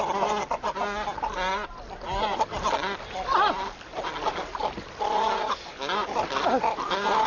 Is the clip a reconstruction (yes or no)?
no